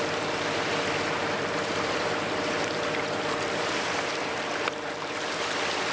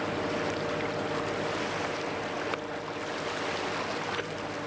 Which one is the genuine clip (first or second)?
second